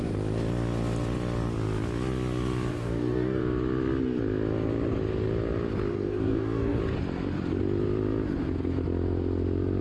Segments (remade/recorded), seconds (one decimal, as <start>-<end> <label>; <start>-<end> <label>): 0.0-2.7 recorded; 2.7-3.4 remade; 3.4-5.9 recorded; 5.9-6.8 remade; 6.8-9.8 recorded